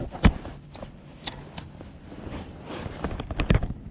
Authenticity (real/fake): real